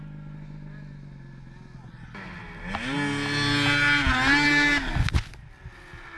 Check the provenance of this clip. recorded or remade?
recorded